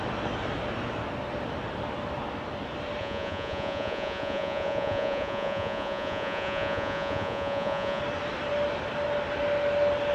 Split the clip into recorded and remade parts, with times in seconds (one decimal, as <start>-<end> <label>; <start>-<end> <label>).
0.0-3.0 recorded; 3.0-8.0 remade; 8.0-10.1 recorded